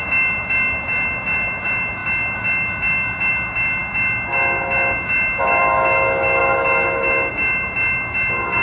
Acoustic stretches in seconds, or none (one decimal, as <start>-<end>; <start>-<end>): 0.0-8.6